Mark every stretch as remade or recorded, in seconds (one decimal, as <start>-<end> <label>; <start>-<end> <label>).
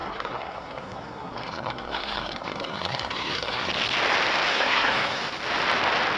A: 0.0-3.7 remade; 3.7-4.5 recorded; 4.5-5.2 remade; 5.2-6.2 recorded